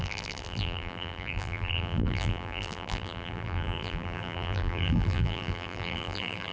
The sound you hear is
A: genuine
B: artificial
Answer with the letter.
B